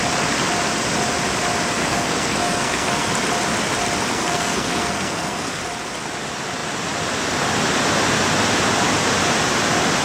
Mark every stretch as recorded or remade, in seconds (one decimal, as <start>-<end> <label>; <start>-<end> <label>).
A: 0.0-1.8 recorded; 1.8-3.1 remade; 3.1-4.1 recorded; 4.1-5.6 remade; 5.6-10.0 recorded